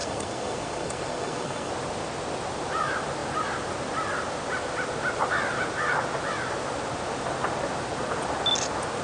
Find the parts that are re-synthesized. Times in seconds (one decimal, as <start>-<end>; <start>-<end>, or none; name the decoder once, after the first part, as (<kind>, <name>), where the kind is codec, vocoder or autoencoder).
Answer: 0.0-1.7 (codec, SNAC)